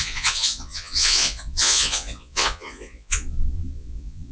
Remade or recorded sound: remade